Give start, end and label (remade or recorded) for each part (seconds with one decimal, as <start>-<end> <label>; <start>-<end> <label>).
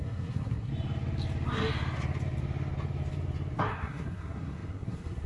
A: 0.0-0.7 remade; 0.7-3.6 recorded; 3.6-5.3 remade